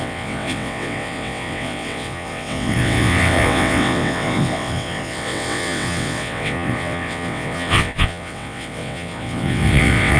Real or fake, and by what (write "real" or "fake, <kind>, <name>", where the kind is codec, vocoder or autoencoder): fake, vocoder, WaveNeXt